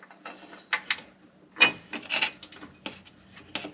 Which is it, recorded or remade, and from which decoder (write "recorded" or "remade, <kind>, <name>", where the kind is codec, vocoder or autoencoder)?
recorded